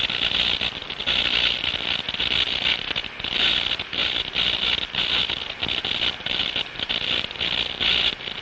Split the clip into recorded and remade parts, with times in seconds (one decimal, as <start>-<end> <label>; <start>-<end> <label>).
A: 0.0-8.4 recorded